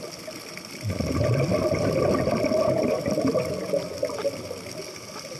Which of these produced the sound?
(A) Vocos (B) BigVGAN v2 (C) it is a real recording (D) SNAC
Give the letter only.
C